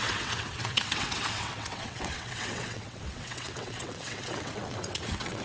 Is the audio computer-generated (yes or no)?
yes